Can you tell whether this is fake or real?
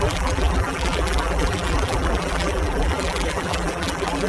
fake